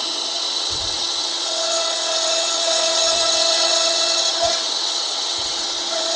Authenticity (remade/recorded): remade